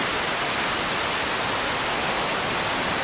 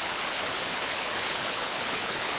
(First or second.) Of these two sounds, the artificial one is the second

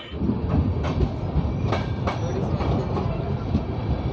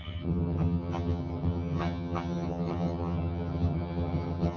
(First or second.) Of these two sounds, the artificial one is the second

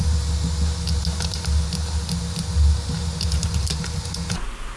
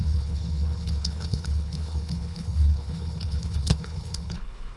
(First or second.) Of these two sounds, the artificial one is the second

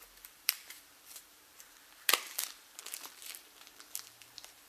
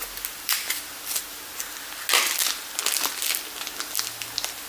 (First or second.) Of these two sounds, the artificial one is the first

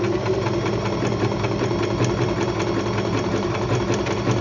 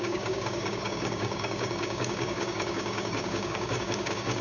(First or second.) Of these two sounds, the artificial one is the second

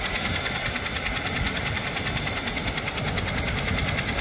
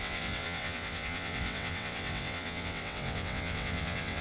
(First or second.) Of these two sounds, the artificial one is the second